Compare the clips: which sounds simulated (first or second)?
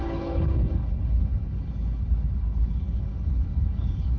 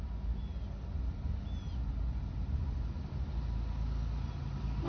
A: first